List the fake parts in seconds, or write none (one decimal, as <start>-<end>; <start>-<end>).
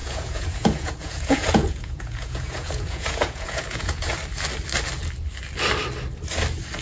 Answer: 0.0-4.1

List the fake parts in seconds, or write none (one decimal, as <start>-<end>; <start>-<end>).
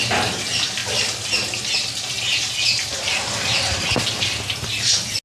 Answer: none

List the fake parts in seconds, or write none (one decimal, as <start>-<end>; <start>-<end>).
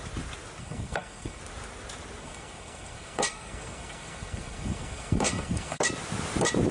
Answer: 0.6-1.4; 2.2-5.8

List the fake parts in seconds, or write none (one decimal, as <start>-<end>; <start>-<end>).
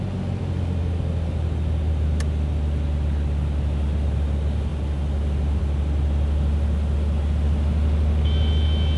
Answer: none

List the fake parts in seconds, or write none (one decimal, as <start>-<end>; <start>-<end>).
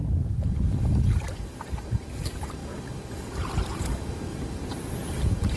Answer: 0.0-0.6; 4.3-5.6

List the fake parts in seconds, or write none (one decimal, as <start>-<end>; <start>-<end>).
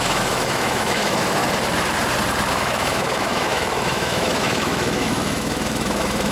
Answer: 0.0-1.4; 2.5-6.3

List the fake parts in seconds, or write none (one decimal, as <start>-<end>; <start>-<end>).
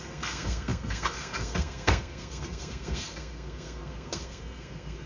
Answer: 0.0-5.1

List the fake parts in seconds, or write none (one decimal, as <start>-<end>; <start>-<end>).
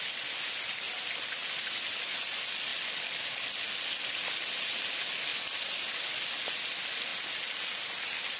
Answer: none